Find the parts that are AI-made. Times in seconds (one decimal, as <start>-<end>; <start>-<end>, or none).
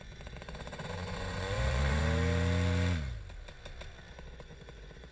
0.0-2.0; 4.1-5.1